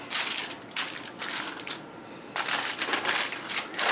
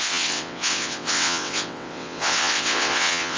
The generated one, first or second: second